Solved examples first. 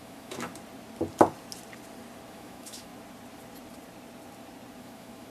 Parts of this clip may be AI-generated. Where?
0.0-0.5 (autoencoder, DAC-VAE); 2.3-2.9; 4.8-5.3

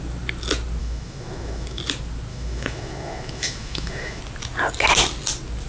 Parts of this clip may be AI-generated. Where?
0.8-1.8 (autoencoder, DAC-VAE); 2.3-4.2

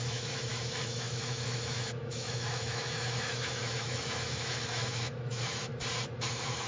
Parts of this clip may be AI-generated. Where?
0.0-5.7 (autoencoder, DAC-VAE); 6.3-6.7

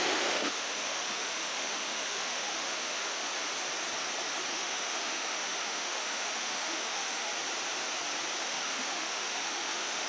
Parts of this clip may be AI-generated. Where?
0.0-3.3 (autoencoder, DAC-VAE); 4.5-7.3; 8.4-10.1

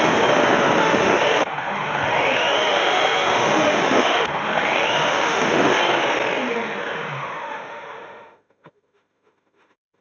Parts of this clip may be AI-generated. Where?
0.8-5.8 (autoencoder, DAC-VAE); 6.4-10.0